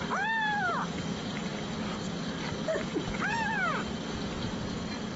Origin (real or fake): real